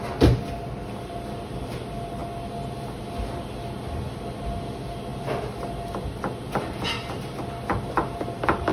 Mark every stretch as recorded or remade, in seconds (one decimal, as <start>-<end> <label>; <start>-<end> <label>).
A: 0.0-8.7 recorded